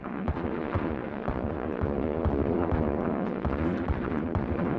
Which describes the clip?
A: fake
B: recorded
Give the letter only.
A